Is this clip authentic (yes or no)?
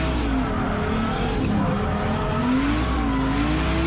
yes